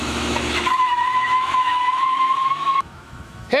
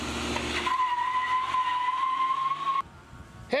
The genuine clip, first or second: second